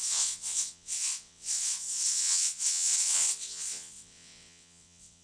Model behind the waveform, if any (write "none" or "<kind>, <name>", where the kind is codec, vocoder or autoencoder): vocoder, WaveNeXt